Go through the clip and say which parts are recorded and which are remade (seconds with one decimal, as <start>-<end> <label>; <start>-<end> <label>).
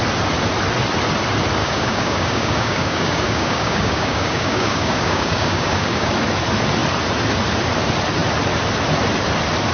0.0-1.6 recorded; 1.6-6.1 remade; 6.1-9.7 recorded